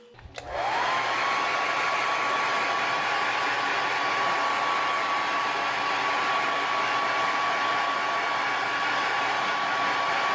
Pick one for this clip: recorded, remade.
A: recorded